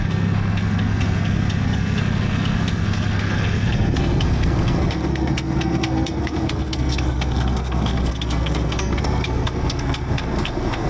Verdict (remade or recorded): remade